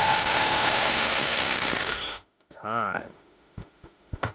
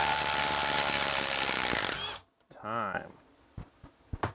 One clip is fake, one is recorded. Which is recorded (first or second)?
second